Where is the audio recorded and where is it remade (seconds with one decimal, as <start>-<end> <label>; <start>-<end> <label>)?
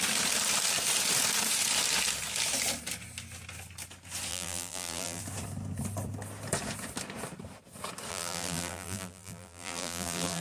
0.0-4.3 recorded; 4.3-5.2 remade; 5.2-8.1 recorded; 8.1-10.4 remade